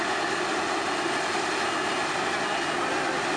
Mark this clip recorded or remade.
recorded